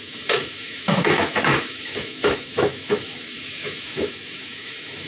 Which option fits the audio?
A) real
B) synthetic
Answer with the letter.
B